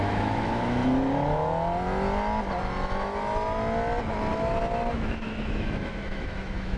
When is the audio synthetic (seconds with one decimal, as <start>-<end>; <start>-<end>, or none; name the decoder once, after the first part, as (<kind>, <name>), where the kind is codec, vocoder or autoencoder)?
0.0-0.8 (autoencoder, DAC-VAE); 4.9-6.8